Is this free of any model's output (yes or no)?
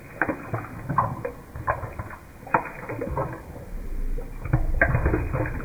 yes